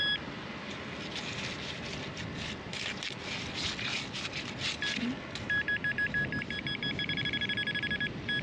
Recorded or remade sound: recorded